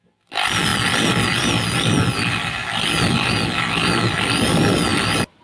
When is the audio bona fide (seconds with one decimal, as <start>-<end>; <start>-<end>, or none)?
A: 0.0-0.7; 1.5-4.9